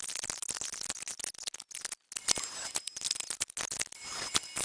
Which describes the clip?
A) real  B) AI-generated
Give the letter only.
A